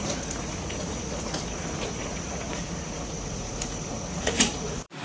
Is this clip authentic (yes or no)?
no